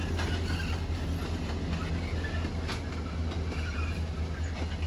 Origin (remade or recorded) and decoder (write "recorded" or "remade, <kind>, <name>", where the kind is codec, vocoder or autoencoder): recorded